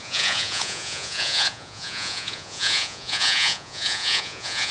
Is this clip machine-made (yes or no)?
yes